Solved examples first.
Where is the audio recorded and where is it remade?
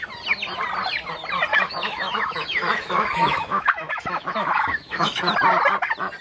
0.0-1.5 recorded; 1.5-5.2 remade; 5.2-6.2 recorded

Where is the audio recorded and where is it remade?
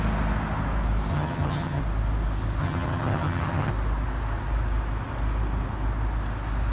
0.0-1.1 recorded; 1.1-1.8 remade; 1.8-2.6 recorded; 2.6-3.7 remade; 3.7-6.7 recorded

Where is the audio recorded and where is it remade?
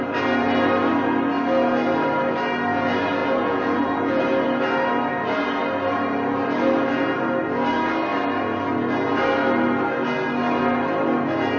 0.0-3.2 recorded; 3.2-4.2 remade; 4.2-11.6 recorded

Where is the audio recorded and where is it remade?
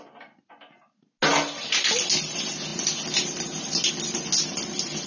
0.0-5.1 recorded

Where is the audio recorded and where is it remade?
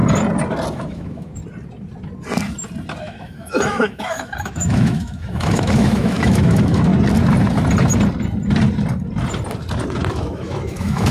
0.0-0.7 recorded; 0.7-1.4 remade; 1.4-3.0 recorded; 3.0-6.9 remade; 6.9-10.1 recorded; 10.1-11.1 remade